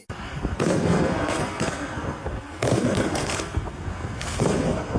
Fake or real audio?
fake